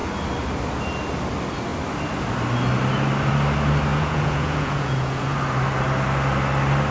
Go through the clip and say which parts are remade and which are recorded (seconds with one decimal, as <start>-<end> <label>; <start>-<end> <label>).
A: 0.0-3.9 recorded; 3.9-5.3 remade; 5.3-6.9 recorded

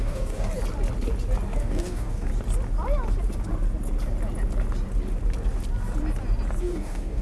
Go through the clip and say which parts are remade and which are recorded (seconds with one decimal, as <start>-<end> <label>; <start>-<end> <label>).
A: 0.0-0.5 remade; 0.5-1.6 recorded; 1.6-2.3 remade; 2.3-6.6 recorded; 6.6-7.2 remade